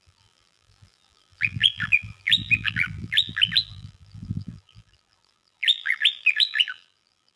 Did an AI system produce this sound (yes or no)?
yes